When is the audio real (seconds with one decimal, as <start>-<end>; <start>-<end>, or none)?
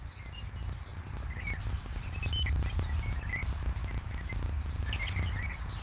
0.0-3.8; 4.3-5.8